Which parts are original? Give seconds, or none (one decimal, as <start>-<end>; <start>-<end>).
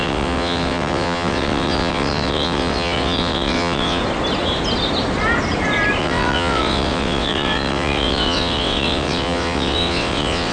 4.0-6.0